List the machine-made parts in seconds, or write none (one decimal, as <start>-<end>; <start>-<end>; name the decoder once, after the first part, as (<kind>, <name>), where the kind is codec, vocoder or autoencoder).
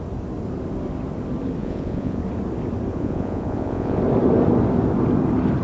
1.6-2.2 (vocoder, Vocos); 2.9-4.0